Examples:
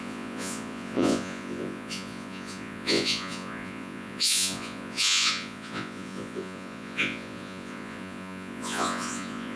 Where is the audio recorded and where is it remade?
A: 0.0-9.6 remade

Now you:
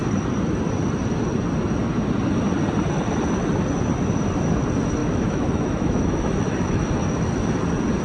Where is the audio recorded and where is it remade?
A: 0.0-5.0 recorded; 5.0-6.9 remade; 6.9-8.0 recorded

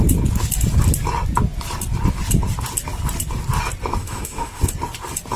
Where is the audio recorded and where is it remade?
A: 0.0-4.0 recorded; 4.0-4.6 remade; 4.6-5.4 recorded

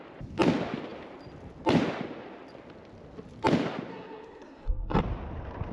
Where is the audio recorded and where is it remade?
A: 0.0-3.9 recorded; 3.9-5.0 remade; 5.0-5.7 recorded

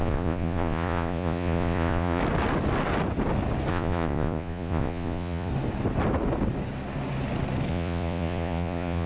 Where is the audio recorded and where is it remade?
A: 0.0-2.2 remade; 2.2-3.7 recorded; 3.7-5.5 remade; 5.5-7.7 recorded; 7.7-9.1 remade